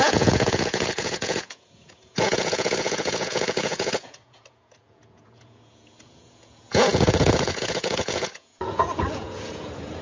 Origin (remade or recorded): remade